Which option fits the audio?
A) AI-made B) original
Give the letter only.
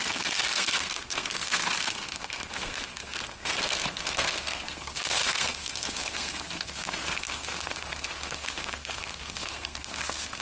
A